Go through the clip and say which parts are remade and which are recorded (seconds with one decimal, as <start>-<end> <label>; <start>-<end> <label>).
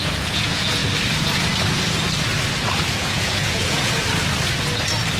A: 0.0-0.8 remade; 0.8-2.9 recorded; 2.9-4.0 remade; 4.0-5.2 recorded